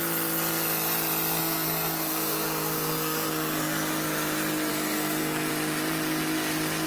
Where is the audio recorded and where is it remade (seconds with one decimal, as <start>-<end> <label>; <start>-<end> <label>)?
0.0-1.4 recorded; 1.4-3.9 remade; 3.9-4.7 recorded; 4.7-5.5 remade; 5.5-6.9 recorded